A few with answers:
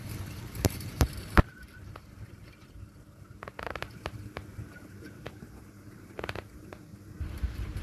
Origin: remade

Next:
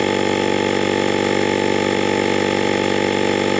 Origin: recorded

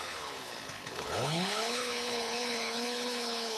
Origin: remade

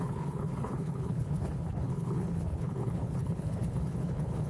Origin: remade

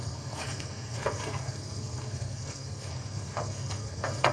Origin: remade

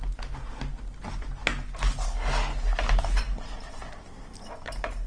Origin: recorded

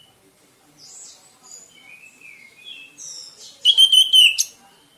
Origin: recorded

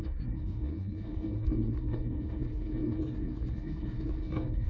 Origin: remade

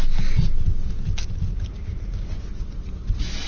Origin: recorded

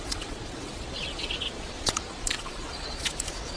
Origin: remade